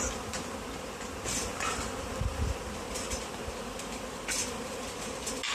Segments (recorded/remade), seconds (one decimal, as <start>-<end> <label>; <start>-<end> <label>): 0.0-5.5 recorded